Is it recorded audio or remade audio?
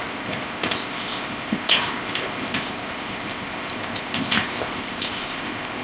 remade